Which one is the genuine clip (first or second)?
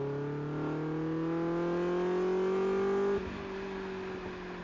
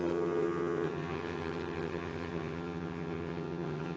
first